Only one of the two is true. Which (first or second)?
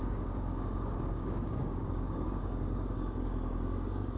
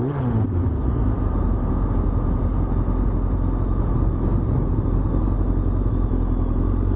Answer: second